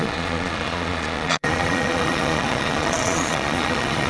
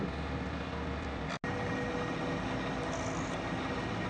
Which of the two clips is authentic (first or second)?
second